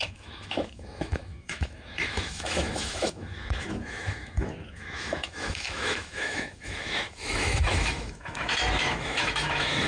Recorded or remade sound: remade